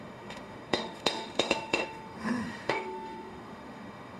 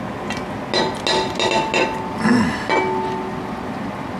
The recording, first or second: second